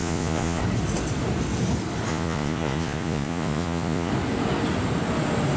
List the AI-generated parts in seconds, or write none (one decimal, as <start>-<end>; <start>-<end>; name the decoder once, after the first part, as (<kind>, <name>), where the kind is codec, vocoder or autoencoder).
0.0-0.6 (vocoder, Vocos); 2.1-4.1